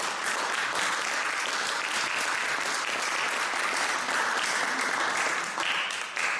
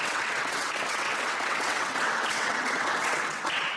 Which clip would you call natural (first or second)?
first